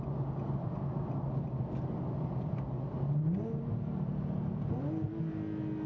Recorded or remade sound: recorded